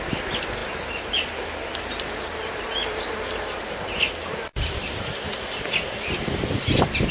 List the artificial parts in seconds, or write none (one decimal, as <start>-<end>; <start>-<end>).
0.6-3.9; 4.5-6.4